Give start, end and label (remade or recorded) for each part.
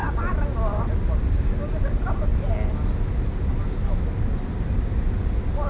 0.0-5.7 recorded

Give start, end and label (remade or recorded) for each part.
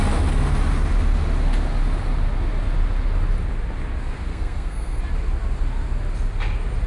0.0-4.3 recorded; 4.3-5.0 remade; 5.0-6.9 recorded